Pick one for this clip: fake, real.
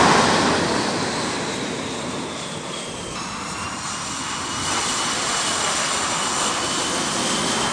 real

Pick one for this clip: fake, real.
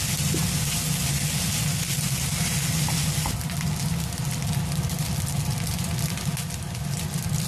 real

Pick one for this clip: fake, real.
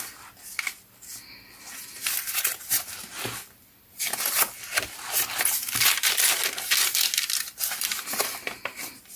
real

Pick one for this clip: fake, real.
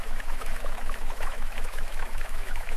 fake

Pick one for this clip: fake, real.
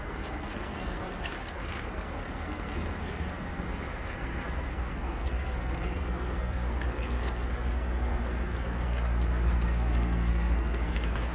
fake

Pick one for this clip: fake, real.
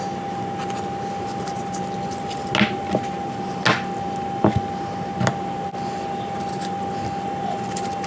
real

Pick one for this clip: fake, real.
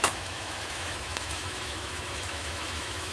fake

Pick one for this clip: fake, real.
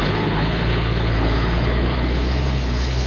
fake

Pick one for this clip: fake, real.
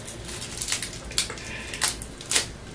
real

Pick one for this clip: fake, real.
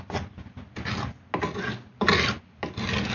real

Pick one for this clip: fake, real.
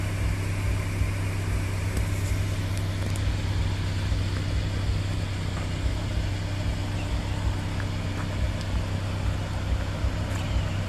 real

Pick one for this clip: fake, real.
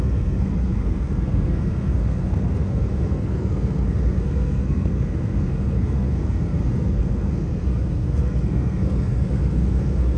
fake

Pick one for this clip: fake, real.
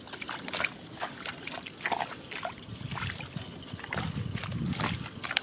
real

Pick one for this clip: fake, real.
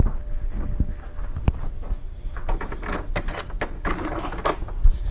real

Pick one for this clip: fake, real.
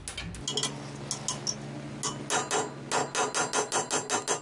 real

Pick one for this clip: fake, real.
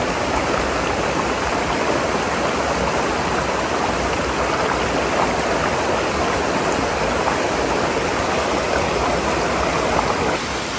real